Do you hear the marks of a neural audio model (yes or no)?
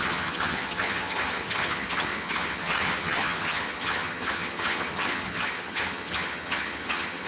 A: yes